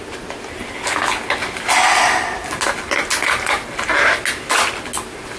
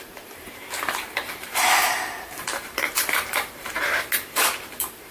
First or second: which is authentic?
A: first